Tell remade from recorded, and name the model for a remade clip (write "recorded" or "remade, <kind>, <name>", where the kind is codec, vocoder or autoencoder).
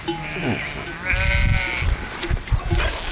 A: recorded